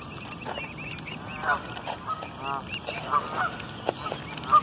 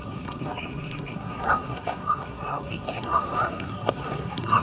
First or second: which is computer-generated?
second